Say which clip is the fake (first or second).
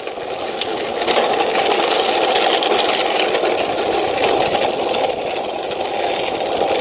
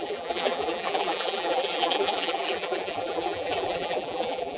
second